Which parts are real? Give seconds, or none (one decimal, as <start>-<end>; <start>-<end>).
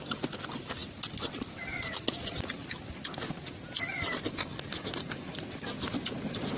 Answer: 0.0-6.6